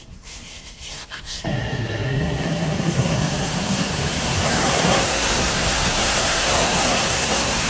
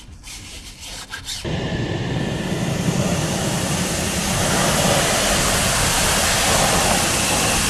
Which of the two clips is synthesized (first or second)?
first